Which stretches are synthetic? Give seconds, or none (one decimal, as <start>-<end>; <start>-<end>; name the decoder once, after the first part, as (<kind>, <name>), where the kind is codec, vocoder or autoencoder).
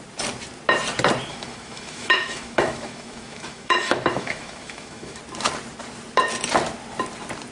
1.3-5.2 (autoencoder, DAC-VAE)